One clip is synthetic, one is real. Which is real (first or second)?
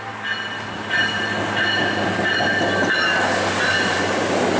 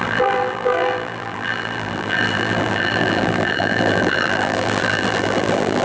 first